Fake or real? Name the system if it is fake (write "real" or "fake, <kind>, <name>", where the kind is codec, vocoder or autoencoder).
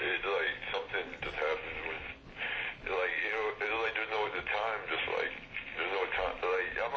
real